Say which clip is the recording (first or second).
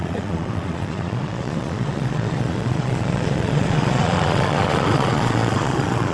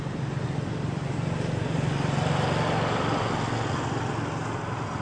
second